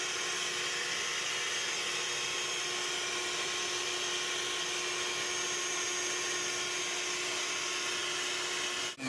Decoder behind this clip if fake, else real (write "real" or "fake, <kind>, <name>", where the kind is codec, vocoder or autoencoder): real